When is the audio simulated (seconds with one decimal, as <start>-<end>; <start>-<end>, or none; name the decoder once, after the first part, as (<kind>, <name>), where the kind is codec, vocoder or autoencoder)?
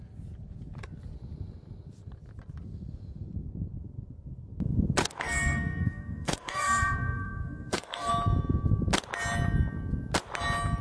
5.0-8.1 (codec, SNAC)